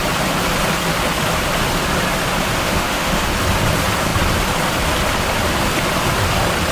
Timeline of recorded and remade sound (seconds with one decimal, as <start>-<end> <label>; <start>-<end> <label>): 0.0-2.6 recorded; 2.6-3.3 remade; 3.3-6.7 recorded